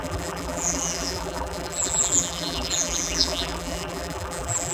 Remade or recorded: remade